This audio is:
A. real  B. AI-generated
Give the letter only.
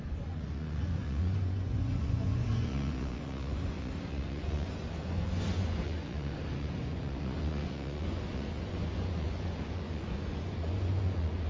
B